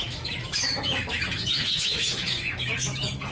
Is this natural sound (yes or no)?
no